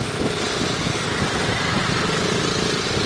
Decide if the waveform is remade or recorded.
recorded